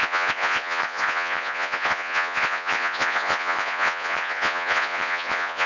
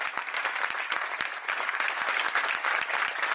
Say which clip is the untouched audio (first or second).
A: second